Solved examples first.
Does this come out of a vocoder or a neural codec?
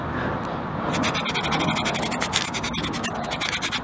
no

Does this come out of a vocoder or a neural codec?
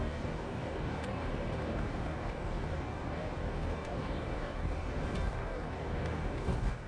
yes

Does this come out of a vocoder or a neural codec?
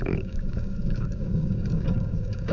yes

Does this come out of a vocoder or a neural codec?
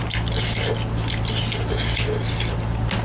no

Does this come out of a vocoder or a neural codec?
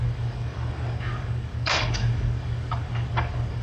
yes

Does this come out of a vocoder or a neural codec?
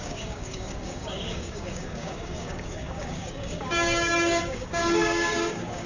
yes